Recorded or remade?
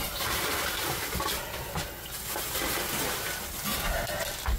recorded